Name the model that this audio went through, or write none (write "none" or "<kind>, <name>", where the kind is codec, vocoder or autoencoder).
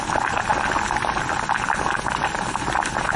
none